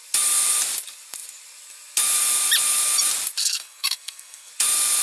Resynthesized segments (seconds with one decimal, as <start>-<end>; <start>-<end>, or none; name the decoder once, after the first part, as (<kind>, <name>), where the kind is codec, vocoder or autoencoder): 3.4-4.5 (codec, SNAC)